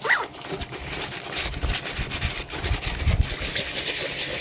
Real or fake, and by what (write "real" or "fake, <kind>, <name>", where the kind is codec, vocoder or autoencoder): real